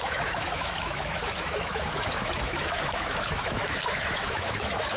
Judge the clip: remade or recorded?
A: remade